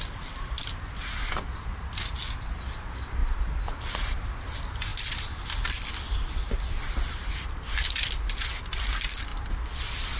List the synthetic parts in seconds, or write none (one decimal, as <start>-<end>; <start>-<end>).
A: 3.2-3.9; 4.9-8.5